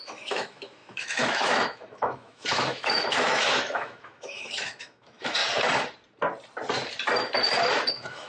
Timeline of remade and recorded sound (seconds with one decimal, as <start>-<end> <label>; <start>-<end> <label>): 0.0-5.4 remade; 5.4-7.9 recorded; 7.9-8.3 remade